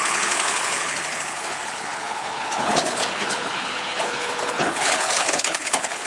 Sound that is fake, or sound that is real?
fake